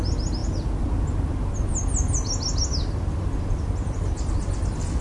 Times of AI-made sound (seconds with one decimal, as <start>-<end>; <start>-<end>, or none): none